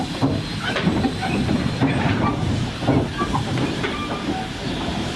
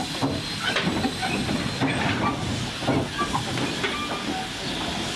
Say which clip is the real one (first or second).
second